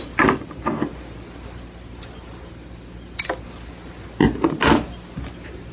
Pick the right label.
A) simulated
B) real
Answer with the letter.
B